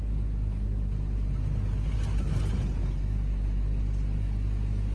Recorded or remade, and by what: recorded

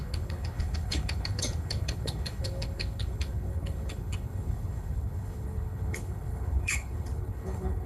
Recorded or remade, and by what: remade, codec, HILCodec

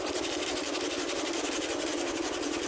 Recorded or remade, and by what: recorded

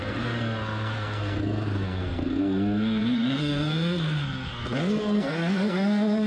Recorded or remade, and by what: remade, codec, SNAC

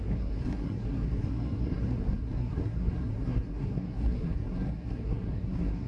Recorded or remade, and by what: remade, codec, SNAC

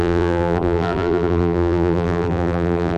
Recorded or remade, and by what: remade, vocoder, BigVGAN v2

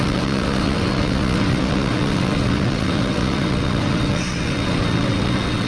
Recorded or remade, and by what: remade, vocoder, WaveNeXt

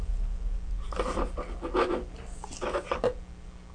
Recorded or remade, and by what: recorded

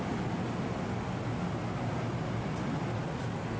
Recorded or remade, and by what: recorded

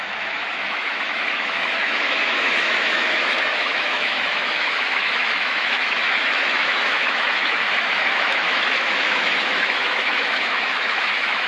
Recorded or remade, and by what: remade, autoencoder, DAC-VAE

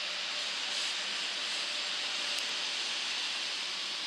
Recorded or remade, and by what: recorded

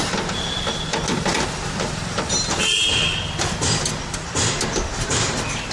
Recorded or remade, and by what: recorded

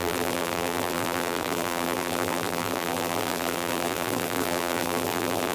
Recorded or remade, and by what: remade, vocoder, BigVGAN v2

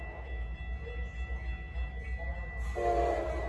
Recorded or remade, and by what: recorded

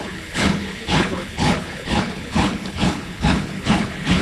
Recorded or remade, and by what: remade, codec, HILCodec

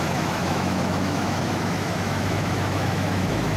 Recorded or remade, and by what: remade, autoencoder, DAC-VAE